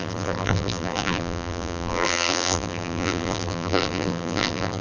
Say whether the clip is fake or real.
fake